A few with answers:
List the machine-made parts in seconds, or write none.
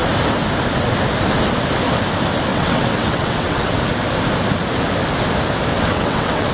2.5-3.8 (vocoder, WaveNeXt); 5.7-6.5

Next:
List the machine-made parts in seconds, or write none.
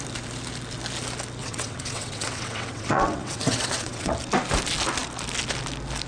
1.4-4.1 (vocoder, WaveNeXt)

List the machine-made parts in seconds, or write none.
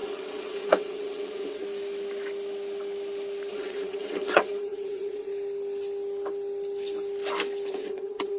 0.0-1.6 (vocoder, WaveNeXt); 3.5-5.3; 7.7-8.4